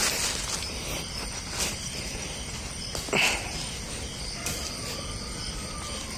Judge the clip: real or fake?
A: real